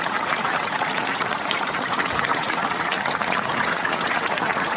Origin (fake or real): fake